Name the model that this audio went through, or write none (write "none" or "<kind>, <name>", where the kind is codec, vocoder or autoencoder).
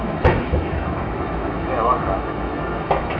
autoencoder, DAC-VAE